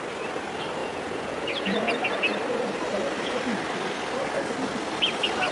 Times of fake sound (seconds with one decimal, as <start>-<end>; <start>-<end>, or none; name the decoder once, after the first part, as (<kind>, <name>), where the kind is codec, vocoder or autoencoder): 0.8-1.9 (vocoder, Vocos)